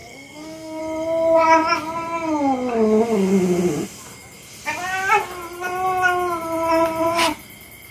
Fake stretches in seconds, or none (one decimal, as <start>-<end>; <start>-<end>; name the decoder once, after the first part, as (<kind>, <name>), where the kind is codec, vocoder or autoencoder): 0.0-0.8 (codec, SNAC)